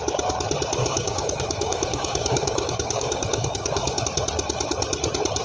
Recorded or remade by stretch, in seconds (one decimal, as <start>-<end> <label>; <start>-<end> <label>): 0.0-0.8 recorded; 0.8-4.0 remade; 4.0-5.4 recorded